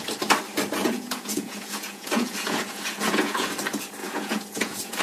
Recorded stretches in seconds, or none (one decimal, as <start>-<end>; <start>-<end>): 0.0-0.8; 3.5-4.0